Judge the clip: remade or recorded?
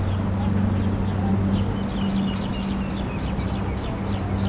recorded